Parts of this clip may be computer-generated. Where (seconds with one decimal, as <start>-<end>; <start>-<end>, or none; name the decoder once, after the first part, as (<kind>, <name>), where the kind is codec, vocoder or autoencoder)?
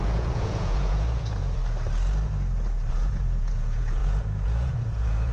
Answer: 0.0-1.6 (vocoder, Vocos); 2.9-5.3